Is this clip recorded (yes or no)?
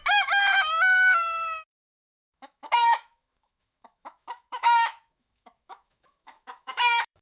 no